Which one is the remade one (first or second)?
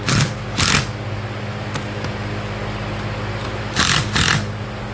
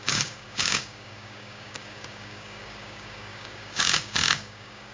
second